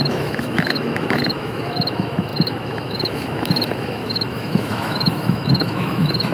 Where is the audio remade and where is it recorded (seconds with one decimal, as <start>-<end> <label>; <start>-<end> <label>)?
0.0-6.3 remade